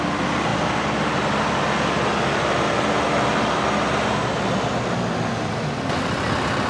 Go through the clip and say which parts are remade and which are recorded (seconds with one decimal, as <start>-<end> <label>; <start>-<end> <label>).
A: 0.0-6.7 recorded